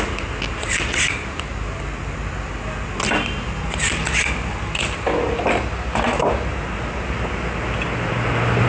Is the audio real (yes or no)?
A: yes